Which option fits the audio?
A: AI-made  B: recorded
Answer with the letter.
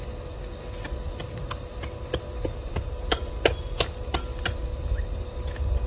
B